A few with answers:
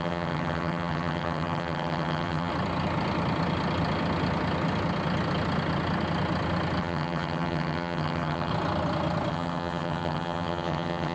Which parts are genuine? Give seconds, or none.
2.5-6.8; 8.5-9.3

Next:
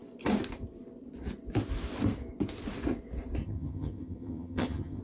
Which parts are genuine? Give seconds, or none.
0.0-3.4